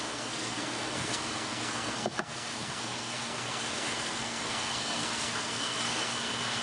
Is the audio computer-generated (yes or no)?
yes